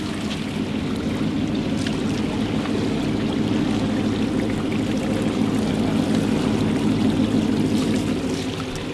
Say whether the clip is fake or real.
real